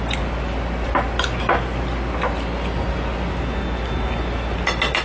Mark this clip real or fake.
real